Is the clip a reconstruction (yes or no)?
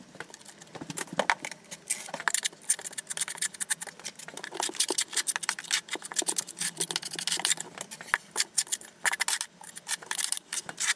no